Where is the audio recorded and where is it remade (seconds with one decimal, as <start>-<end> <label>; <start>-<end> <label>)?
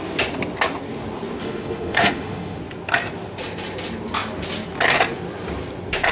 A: 0.0-1.4 recorded; 1.4-2.6 remade; 2.6-6.1 recorded